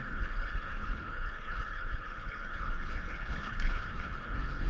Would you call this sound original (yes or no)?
no